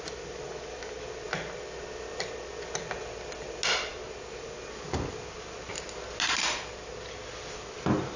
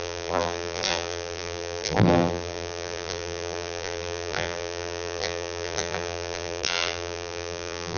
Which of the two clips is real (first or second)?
first